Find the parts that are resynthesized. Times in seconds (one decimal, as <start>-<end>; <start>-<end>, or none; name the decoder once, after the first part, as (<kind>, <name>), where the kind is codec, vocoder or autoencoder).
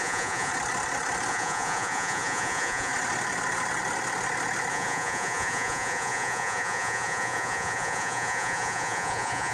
0.0-0.5 (vocoder, Vocos); 1.3-2.9; 4.7-9.5